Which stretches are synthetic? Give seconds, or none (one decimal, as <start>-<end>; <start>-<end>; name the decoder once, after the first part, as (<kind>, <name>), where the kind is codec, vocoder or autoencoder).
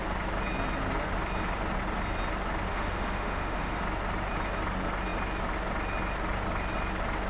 2.7-3.8 (autoencoder, DAC-VAE)